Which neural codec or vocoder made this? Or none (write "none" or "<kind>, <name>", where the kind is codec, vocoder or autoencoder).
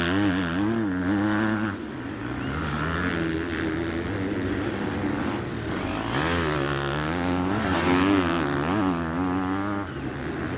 none